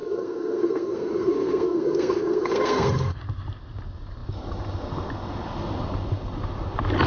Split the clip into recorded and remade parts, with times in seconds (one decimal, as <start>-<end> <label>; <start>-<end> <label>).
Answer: 0.0-3.2 remade; 3.2-7.1 recorded

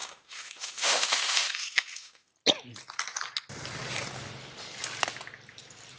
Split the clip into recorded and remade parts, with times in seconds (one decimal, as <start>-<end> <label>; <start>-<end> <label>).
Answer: 0.0-2.3 remade; 2.3-6.0 recorded